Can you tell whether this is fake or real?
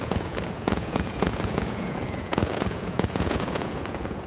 fake